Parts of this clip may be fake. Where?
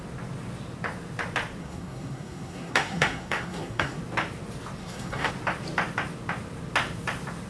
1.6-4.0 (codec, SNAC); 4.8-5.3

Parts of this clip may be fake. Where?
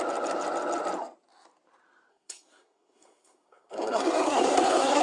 2.1-5.0 (codec, SNAC)